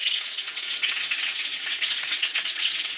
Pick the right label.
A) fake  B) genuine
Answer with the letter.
A